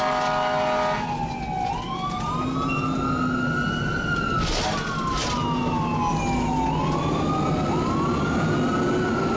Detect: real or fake real